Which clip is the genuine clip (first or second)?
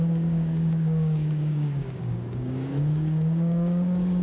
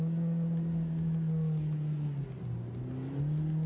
second